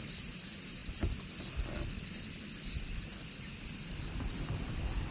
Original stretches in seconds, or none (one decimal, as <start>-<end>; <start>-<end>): 0.0-5.1